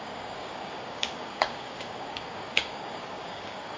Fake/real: fake